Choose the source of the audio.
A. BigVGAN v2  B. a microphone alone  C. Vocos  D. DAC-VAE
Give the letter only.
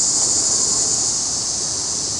B